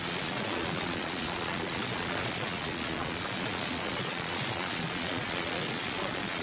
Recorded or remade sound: remade